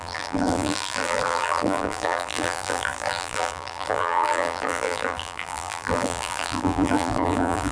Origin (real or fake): fake